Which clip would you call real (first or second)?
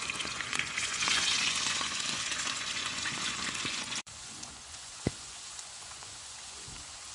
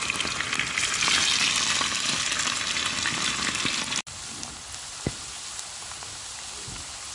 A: second